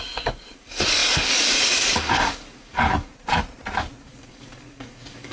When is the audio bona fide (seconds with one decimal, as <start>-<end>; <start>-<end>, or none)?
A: 3.1-4.0